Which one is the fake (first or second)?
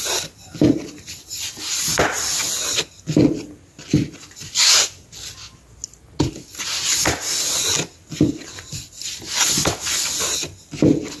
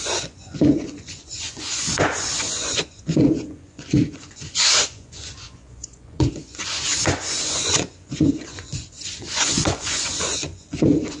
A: second